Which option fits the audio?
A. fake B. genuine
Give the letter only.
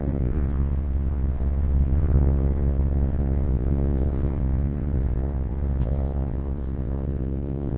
A